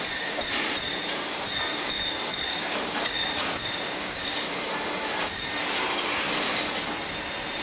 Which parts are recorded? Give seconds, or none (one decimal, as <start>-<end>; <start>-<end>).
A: 0.0-1.7; 4.5-7.6